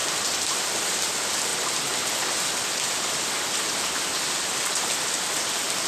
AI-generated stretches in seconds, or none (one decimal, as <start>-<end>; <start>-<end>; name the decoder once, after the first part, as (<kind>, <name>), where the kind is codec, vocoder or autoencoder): none